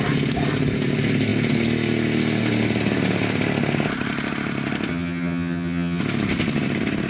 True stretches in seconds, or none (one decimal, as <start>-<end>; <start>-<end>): 0.0-4.9; 6.0-7.1